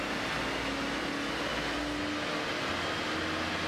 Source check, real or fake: real